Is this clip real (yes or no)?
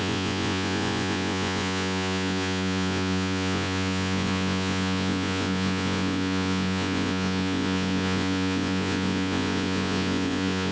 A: no